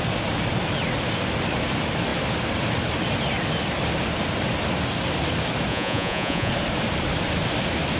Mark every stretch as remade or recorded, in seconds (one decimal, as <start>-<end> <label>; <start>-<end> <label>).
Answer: 0.0-5.7 recorded; 5.7-6.5 remade; 6.5-8.0 recorded